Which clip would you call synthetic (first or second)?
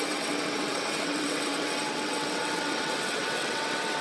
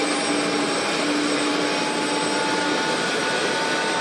first